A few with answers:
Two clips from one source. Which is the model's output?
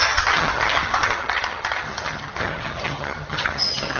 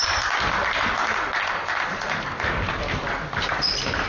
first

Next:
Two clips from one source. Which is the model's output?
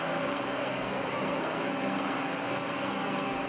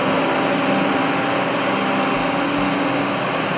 first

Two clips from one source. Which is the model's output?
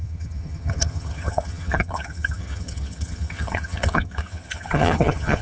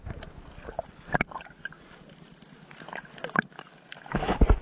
first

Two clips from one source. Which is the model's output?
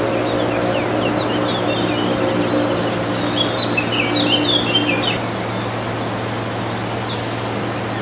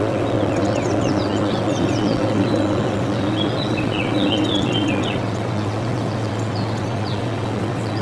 second